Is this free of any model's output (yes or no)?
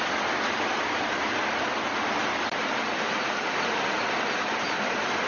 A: yes